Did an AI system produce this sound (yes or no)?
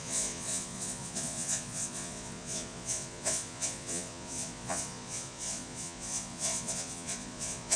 yes